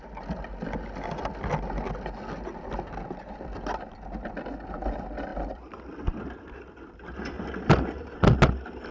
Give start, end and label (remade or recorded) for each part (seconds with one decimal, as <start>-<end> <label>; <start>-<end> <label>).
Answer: 0.0-8.9 recorded